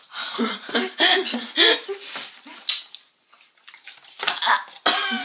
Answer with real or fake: real